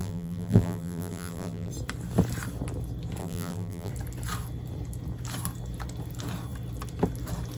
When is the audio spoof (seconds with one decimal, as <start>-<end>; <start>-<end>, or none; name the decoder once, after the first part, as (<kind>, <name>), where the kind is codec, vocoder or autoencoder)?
0.0-1.7 (vocoder, BigVGAN v2); 3.2-3.9

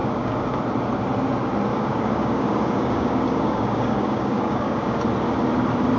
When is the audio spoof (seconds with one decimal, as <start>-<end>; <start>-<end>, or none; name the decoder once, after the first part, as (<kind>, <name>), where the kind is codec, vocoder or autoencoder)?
0.0-0.6 (codec, DAC); 1.7-5.0

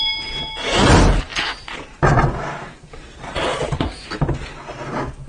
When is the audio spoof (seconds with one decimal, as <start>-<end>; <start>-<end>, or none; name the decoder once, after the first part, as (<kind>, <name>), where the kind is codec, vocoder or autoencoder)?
none